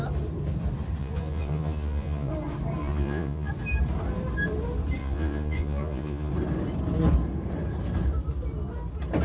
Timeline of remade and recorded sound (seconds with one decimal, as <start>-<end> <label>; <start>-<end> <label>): 0.0-1.0 recorded; 1.0-2.3 remade; 2.3-2.8 recorded; 2.8-3.5 remade; 3.5-5.0 recorded; 5.0-6.3 remade; 6.3-9.2 recorded